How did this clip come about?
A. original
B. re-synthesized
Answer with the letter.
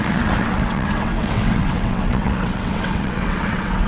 B